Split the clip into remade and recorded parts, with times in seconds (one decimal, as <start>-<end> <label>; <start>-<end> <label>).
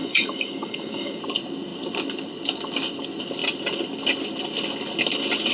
0.0-1.2 remade; 1.2-5.5 recorded